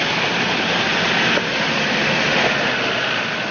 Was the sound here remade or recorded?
recorded